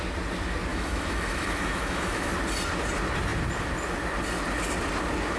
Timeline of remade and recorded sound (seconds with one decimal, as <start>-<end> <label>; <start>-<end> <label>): 0.0-0.7 recorded; 0.7-2.3 remade; 2.3-5.4 recorded